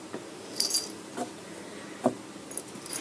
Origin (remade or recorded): recorded